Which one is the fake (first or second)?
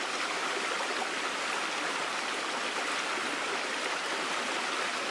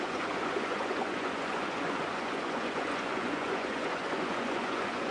second